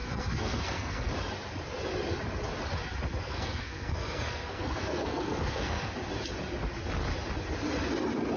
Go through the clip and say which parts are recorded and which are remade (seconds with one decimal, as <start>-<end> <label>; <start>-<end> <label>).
0.0-1.1 remade; 1.1-3.2 recorded; 3.2-5.9 remade; 5.9-8.4 recorded